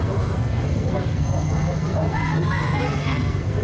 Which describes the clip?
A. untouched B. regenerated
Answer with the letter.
B